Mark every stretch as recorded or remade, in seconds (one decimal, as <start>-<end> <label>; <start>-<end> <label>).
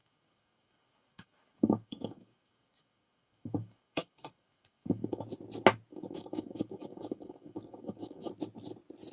0.0-5.2 remade; 5.2-5.9 recorded; 5.9-8.3 remade; 8.3-9.1 recorded